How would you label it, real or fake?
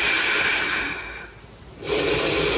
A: real